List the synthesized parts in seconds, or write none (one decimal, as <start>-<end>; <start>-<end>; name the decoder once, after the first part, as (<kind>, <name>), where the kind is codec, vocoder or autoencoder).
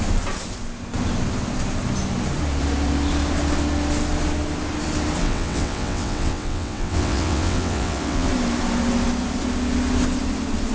5.2-8.3 (vocoder, WaveNeXt)